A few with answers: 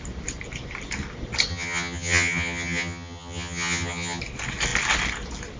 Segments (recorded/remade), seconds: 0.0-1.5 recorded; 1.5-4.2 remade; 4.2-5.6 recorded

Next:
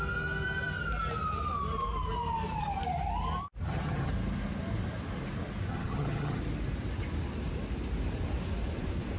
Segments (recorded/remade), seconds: 0.0-3.6 recorded; 3.6-4.1 remade; 4.1-5.7 recorded; 5.7-6.4 remade; 6.4-9.2 recorded

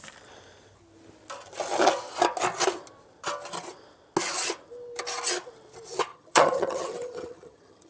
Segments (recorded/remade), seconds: 0.0-6.1 recorded; 6.1-7.9 remade

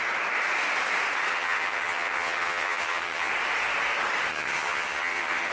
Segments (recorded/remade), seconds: 0.0-1.3 recorded; 1.3-3.3 remade; 3.3-4.3 recorded; 4.3-5.5 remade

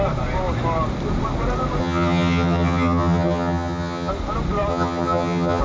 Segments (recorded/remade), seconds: 0.0-1.8 recorded; 1.8-4.1 remade; 4.1-4.7 recorded; 4.7-5.6 remade